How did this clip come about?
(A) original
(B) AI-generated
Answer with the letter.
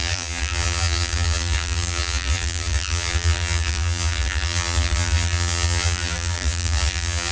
B